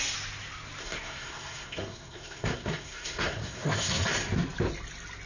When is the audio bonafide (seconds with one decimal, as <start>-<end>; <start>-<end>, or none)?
0.0-0.8; 4.0-5.3